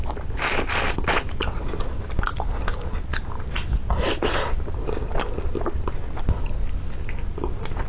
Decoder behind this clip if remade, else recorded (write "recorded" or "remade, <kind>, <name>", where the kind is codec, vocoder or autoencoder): recorded